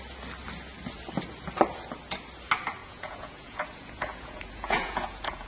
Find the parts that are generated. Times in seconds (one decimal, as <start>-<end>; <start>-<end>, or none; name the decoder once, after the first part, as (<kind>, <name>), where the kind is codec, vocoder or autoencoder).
2.8-5.5 (vocoder, Vocos)